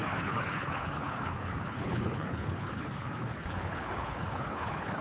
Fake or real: fake